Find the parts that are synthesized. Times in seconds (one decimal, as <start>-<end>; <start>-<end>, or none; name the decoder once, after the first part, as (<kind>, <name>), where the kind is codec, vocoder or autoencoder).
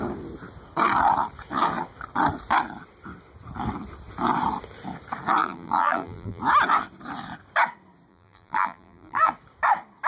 5.4-6.4 (vocoder, BigVGAN v2); 8.1-9.3